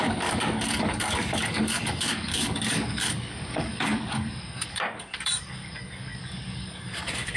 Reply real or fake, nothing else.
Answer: fake